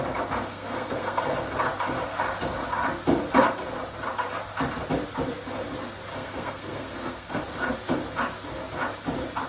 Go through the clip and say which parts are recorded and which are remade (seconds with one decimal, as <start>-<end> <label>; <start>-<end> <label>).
0.0-0.5 recorded; 0.5-1.2 remade; 1.2-6.1 recorded; 6.1-7.4 remade; 7.4-9.5 recorded